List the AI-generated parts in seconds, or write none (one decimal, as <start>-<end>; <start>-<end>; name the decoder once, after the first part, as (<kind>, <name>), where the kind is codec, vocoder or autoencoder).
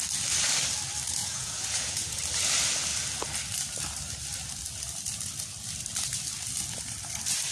1.2-2.2 (vocoder, Vocos)